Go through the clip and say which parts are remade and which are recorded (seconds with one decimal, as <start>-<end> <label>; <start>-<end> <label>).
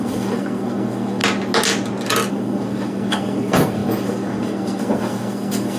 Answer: 0.0-1.2 remade; 1.2-2.3 recorded; 2.3-5.8 remade